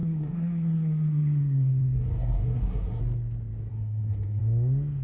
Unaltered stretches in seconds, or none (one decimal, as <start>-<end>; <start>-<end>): 3.0-3.7; 4.4-5.0